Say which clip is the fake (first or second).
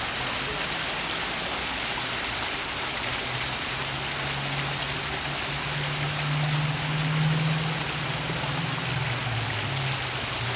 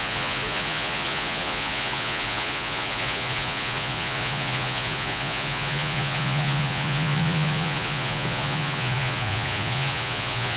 second